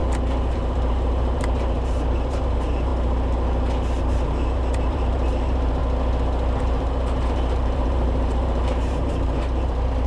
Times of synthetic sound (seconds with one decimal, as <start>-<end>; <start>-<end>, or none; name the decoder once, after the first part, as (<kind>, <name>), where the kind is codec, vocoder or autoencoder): 0.5-2.9 (vocoder, BigVGAN v2); 4.0-5.8; 6.6-10.1